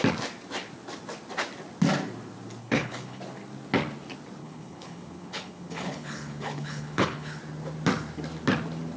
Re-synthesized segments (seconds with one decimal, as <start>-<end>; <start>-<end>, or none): 2.6-3.2; 4.4-7.4